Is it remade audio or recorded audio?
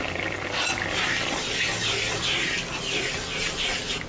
recorded